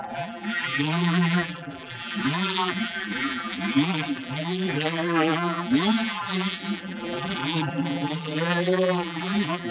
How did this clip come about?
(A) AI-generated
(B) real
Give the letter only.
A